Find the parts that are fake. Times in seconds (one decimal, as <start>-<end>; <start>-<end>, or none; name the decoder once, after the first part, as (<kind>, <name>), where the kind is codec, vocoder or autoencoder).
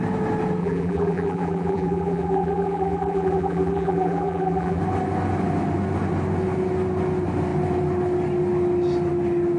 0.6-4.8 (vocoder, BigVGAN v2)